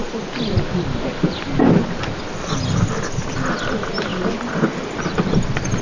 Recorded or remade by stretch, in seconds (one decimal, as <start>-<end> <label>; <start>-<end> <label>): 0.0-5.8 recorded